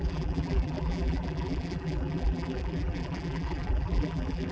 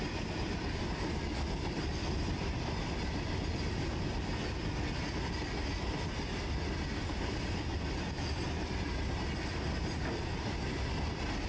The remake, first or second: first